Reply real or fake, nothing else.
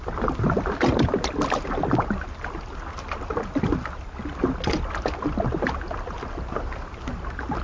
real